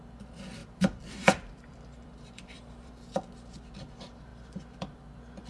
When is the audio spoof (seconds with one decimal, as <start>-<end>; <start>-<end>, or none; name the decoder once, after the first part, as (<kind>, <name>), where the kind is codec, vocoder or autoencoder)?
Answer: 0.6-2.9 (vocoder, BigVGAN v2); 4.3-5.1

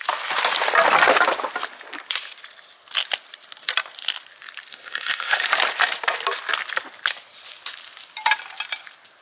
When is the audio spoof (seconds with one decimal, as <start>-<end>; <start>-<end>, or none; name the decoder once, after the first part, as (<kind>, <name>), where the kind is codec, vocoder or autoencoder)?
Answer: 4.7-5.4 (codec, SNAC)